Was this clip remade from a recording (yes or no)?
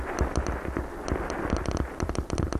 yes